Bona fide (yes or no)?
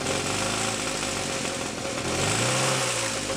yes